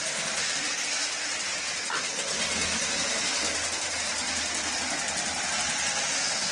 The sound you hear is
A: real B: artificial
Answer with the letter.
A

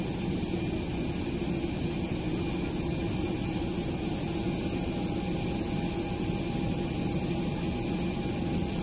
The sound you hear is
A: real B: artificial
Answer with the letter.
A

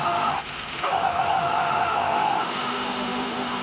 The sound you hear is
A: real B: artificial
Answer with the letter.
B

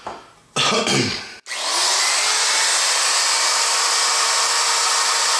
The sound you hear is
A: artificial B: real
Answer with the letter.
B